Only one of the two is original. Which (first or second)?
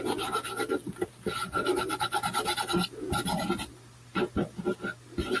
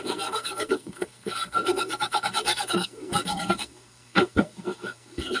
first